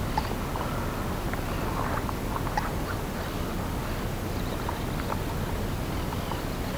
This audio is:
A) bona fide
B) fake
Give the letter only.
A